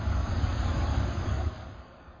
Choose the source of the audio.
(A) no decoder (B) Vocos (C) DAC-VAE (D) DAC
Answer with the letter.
D